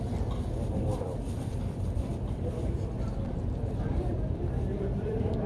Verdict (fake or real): fake